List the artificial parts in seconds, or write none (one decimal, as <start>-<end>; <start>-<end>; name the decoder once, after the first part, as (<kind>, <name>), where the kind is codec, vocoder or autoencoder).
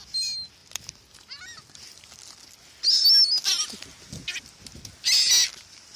none